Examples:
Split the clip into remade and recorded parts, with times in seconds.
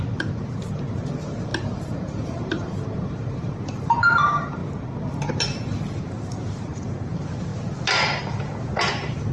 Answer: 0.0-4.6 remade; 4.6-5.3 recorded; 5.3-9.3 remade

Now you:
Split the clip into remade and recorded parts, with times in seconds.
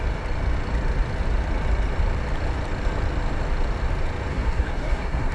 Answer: 0.0-4.3 recorded; 4.3-5.3 remade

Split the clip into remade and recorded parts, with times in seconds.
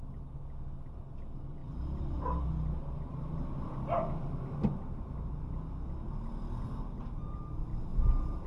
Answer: 0.0-1.6 recorded; 1.6-2.4 remade; 2.4-8.5 recorded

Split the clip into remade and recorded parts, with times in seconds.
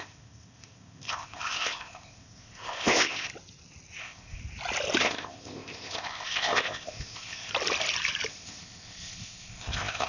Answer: 0.0-3.3 remade; 3.3-4.0 recorded; 4.0-4.4 remade; 4.4-5.0 recorded; 5.0-7.5 remade; 7.5-8.3 recorded; 8.3-10.1 remade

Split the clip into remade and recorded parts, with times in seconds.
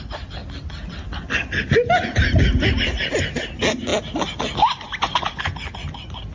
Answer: 0.0-6.3 recorded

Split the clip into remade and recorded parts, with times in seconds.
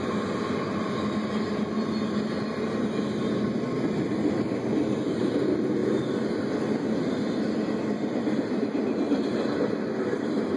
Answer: 0.0-10.6 recorded